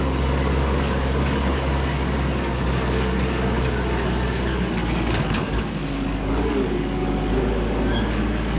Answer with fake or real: fake